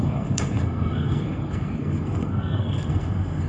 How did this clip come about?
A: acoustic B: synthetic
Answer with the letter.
B